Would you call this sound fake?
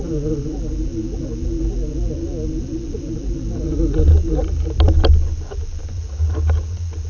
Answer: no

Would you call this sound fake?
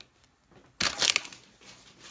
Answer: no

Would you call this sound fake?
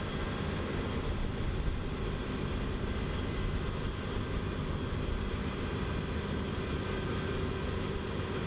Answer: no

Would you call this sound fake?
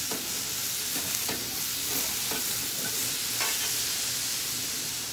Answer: no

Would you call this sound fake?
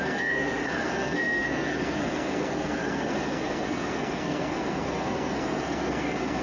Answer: yes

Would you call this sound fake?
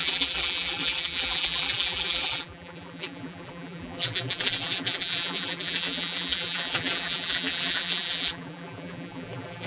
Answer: yes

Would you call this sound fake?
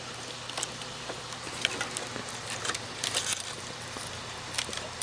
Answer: no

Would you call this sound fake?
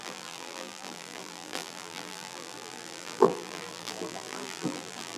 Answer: yes